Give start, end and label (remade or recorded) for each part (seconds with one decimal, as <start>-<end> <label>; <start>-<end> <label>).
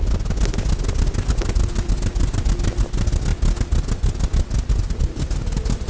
0.0-5.9 recorded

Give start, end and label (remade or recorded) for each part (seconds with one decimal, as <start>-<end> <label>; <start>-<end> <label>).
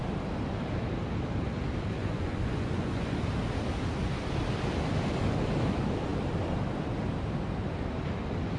0.0-2.0 recorded; 2.0-3.2 remade; 3.2-8.6 recorded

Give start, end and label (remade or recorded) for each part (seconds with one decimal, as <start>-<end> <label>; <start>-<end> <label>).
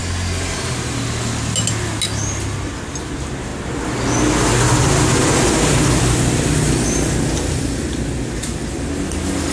0.0-9.5 recorded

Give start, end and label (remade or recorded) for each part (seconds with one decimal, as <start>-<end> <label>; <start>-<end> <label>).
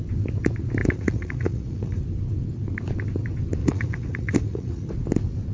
0.0-0.8 recorded; 0.8-2.0 remade; 2.0-3.6 recorded; 3.6-4.9 remade; 4.9-5.5 recorded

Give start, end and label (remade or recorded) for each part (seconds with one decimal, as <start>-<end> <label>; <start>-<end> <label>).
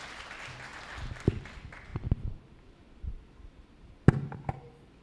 0.0-5.0 recorded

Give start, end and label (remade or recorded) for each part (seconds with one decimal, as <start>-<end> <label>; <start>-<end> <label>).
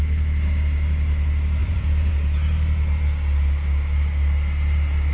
0.0-1.6 recorded; 1.6-2.1 remade; 2.1-5.1 recorded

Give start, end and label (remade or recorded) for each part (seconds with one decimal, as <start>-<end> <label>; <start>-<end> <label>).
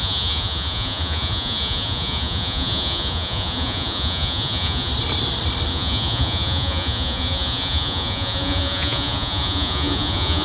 0.0-4.9 remade; 4.9-5.7 recorded; 5.7-10.4 remade